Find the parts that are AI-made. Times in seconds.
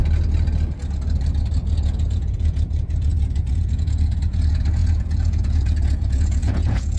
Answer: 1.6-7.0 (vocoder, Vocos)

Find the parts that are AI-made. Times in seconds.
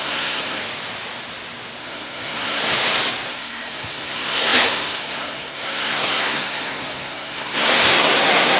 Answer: 0.0-0.6 (codec, SNAC); 1.8-2.6; 3.3-8.6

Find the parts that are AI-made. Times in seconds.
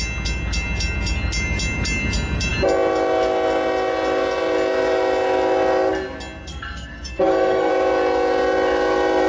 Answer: 6.5-7.7 (codec, SNAC)